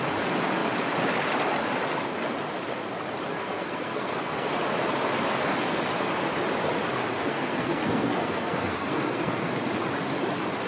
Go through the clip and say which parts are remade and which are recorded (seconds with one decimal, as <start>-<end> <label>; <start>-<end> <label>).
0.0-3.3 recorded; 3.3-4.5 remade; 4.5-7.2 recorded; 7.2-9.5 remade; 9.5-10.7 recorded